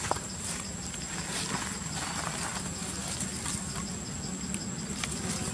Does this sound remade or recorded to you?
recorded